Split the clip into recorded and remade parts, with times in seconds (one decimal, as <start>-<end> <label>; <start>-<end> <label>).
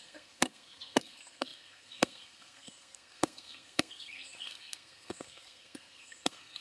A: 0.0-6.6 remade